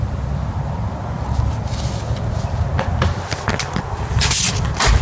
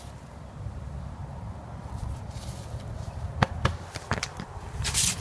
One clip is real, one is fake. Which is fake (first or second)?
second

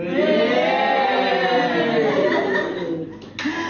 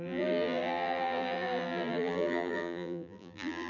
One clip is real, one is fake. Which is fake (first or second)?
second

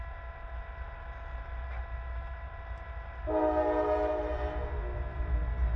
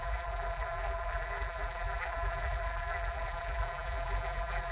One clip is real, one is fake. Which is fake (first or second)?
second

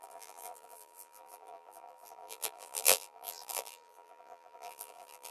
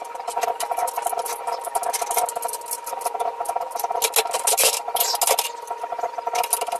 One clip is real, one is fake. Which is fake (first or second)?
first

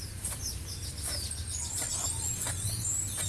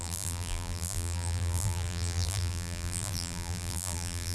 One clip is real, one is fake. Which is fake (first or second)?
second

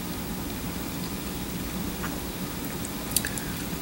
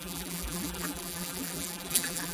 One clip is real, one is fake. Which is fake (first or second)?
second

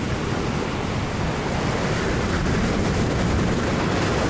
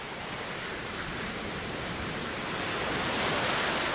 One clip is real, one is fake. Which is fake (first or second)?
second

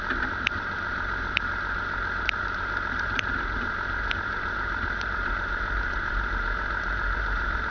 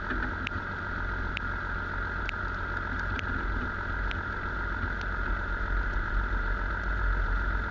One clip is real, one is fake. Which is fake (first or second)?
first